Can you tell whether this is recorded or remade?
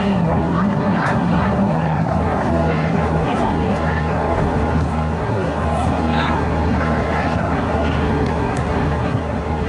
remade